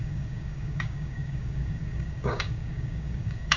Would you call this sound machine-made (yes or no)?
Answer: yes